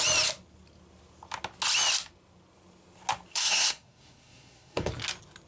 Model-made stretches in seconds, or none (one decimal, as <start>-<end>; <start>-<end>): 3.3-4.9